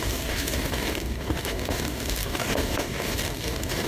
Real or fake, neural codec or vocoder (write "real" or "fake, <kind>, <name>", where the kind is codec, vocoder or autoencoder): fake, codec, DAC